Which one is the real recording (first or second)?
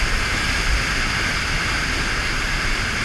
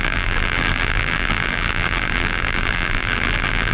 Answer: first